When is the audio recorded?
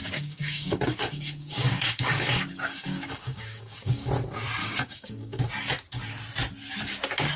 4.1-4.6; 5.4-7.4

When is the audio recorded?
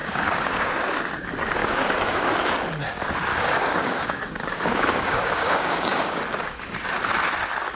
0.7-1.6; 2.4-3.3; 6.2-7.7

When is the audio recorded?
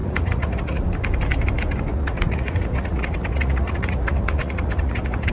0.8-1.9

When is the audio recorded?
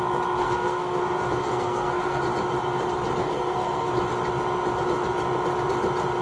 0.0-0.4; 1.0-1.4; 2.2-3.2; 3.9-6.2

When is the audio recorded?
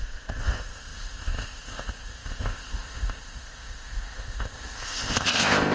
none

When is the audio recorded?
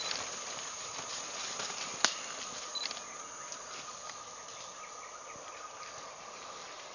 0.9-5.0